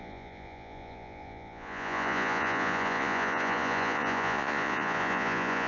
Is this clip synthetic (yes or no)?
yes